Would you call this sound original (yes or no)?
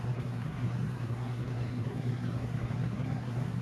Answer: no